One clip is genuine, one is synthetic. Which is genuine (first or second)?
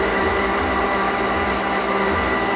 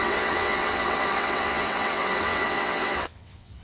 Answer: first